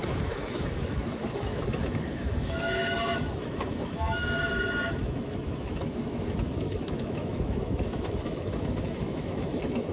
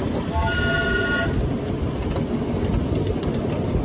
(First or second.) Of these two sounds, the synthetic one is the first